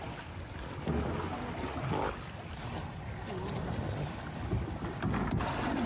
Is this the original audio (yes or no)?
yes